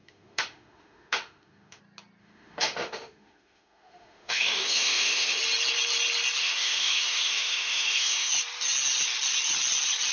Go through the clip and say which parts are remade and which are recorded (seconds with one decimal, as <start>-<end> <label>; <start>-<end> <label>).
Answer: 0.0-1.8 remade; 1.8-2.2 recorded; 2.2-5.4 remade; 5.4-6.4 recorded; 6.4-8.3 remade; 8.3-10.1 recorded